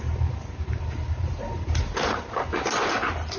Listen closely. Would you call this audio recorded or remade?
remade